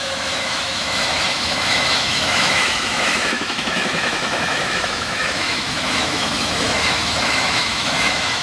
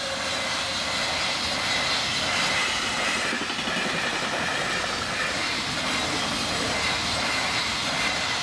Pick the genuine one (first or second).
second